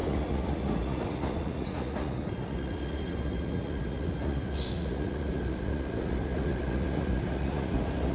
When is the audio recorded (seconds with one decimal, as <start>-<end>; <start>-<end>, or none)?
none